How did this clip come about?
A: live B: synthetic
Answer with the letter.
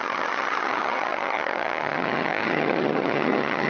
B